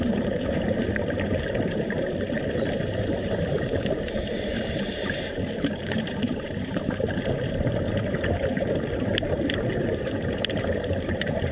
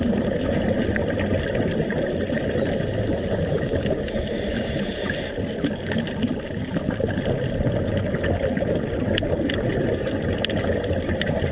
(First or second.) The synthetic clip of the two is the first